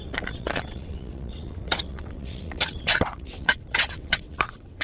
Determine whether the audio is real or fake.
fake